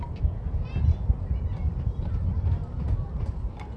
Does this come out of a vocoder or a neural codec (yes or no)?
no